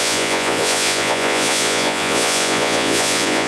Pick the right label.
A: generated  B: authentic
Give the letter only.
A